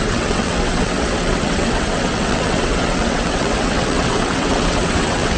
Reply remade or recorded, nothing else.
remade